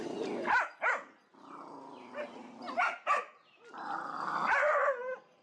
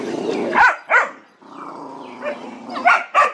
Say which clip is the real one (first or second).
first